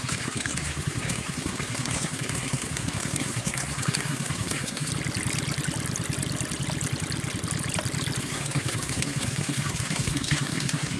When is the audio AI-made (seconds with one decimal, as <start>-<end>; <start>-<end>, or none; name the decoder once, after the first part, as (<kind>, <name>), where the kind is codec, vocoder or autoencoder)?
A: 0.0-4.9 (codec, SNAC); 8.2-11.0